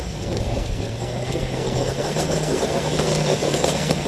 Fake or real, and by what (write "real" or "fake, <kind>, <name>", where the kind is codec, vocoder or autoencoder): fake, codec, SNAC